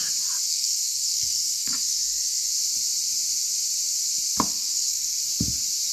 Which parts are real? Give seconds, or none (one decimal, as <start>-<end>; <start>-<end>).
0.0-0.5; 2.5-4.5; 5.2-5.9